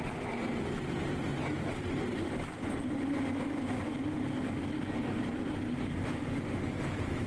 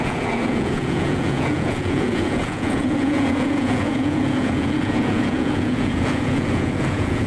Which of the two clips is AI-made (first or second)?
second